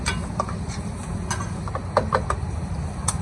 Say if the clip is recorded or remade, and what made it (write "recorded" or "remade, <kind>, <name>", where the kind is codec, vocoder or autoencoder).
recorded